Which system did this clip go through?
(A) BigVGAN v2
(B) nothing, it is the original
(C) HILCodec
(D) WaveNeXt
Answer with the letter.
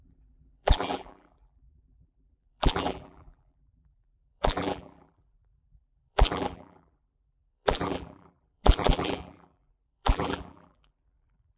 A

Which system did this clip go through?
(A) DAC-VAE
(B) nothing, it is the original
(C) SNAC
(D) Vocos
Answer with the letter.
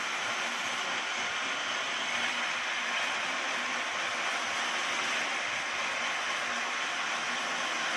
B